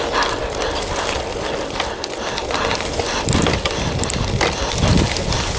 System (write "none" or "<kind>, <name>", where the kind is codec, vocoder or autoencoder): none